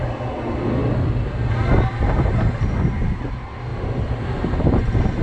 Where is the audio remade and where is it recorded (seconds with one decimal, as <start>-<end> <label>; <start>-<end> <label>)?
0.0-5.2 recorded